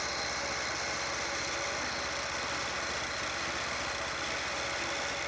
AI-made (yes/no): no